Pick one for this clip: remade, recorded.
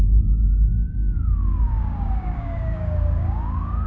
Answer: remade